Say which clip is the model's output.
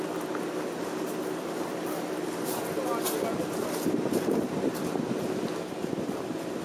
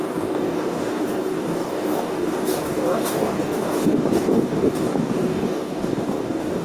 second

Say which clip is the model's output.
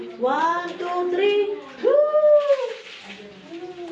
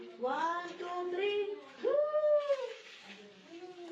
second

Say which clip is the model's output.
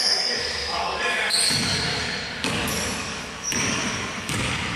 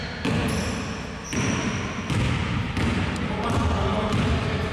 first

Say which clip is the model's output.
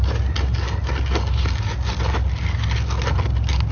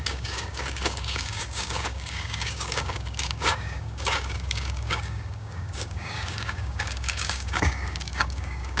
second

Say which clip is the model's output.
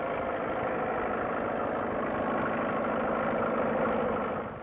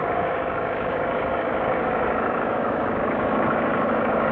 second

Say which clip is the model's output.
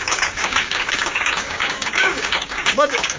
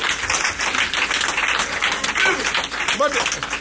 first